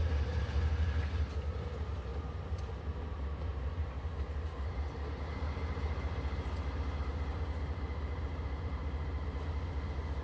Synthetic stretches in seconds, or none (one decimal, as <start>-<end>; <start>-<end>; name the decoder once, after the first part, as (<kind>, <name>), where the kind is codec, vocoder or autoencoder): 0.0-2.1 (vocoder, BigVGAN v2); 3.0-10.2